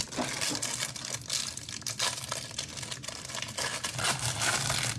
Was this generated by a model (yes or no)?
no